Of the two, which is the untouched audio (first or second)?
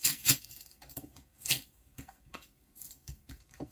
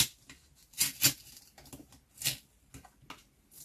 second